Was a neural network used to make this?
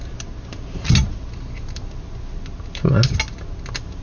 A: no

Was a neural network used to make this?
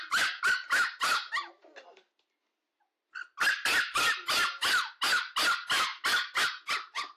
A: no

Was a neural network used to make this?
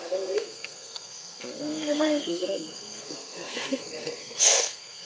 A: yes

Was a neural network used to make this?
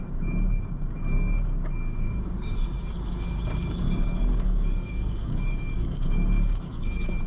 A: yes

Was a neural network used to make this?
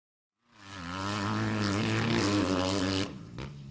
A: no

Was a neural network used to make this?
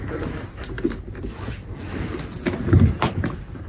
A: no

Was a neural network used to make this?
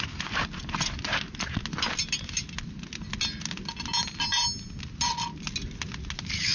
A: no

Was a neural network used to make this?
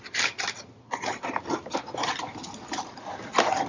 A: no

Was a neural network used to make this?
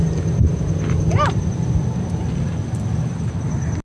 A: no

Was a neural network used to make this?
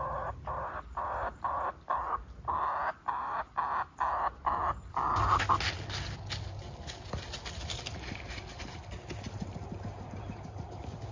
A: no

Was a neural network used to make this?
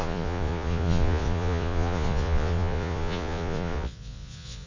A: yes